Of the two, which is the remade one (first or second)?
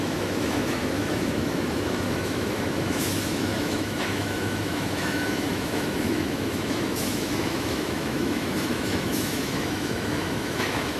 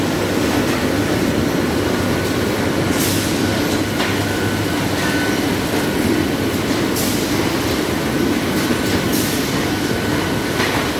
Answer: first